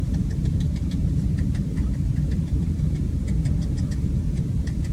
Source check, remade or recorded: remade